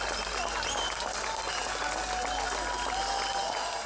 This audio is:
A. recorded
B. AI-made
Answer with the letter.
A